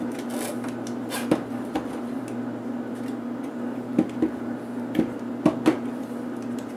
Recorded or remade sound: recorded